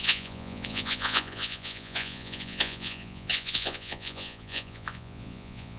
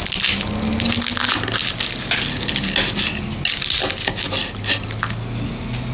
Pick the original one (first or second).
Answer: second